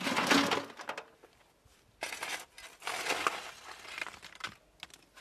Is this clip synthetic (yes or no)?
no